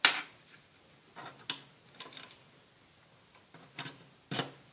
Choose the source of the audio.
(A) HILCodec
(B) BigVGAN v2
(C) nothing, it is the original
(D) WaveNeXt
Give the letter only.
C